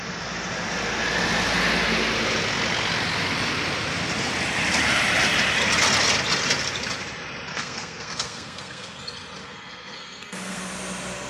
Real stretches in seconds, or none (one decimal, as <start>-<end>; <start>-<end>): 0.0-7.5; 9.0-9.4; 10.6-11.3